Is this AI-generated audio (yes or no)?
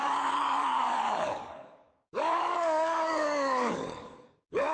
yes